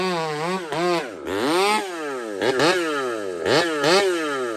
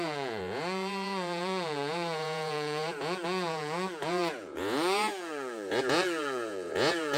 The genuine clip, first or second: first